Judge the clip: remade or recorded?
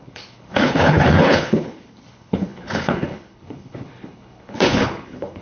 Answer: remade